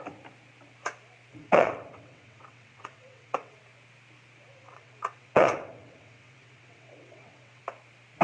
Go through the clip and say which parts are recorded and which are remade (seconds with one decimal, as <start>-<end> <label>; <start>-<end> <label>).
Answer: 0.0-1.3 recorded; 1.3-3.6 remade; 3.6-4.5 recorded; 4.5-7.6 remade; 7.6-8.2 recorded